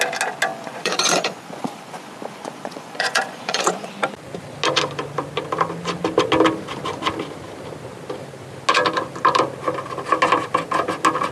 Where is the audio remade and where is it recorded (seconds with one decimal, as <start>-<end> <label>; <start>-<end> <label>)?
0.0-0.5 recorded; 0.5-3.9 remade; 3.9-11.3 recorded